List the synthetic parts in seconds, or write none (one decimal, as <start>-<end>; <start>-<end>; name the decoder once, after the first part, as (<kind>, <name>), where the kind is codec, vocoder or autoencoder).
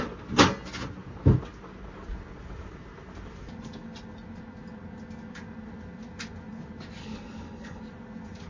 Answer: 7.0-7.8 (codec, HILCodec)